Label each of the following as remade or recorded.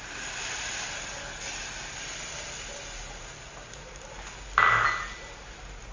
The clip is recorded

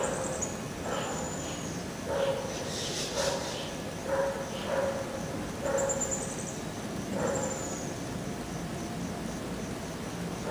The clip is recorded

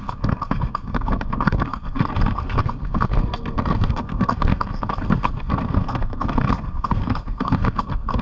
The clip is remade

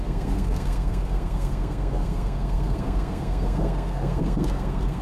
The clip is remade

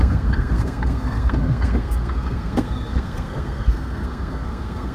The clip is remade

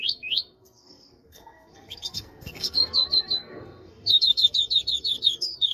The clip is remade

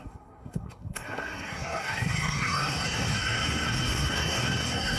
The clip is remade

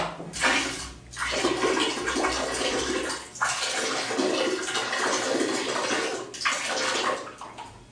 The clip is recorded